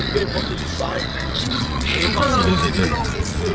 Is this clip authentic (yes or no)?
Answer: no